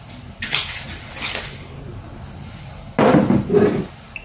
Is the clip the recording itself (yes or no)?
yes